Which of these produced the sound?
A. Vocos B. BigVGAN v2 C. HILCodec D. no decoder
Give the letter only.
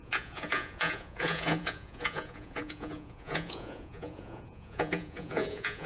A